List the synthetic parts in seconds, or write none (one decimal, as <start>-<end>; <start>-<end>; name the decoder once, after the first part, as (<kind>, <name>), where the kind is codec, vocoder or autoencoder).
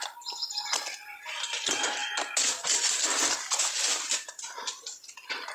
none